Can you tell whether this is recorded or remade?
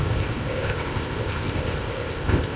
remade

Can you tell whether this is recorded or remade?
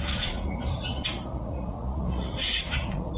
remade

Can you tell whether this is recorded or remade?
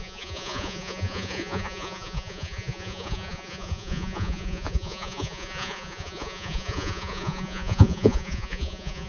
remade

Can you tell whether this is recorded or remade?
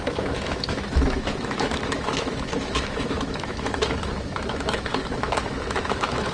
remade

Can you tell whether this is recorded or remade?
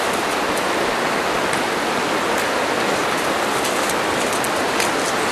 recorded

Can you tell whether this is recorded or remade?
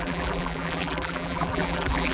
remade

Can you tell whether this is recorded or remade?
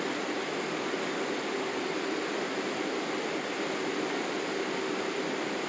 recorded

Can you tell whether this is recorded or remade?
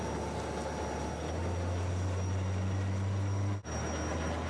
recorded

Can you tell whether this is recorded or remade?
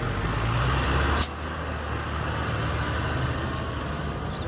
recorded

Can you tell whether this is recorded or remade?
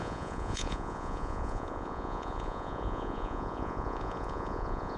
remade